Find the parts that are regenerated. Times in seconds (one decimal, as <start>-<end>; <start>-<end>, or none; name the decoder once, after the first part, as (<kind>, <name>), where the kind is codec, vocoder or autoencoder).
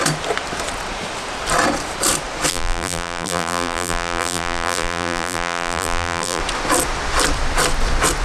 2.5-6.4 (vocoder, BigVGAN v2)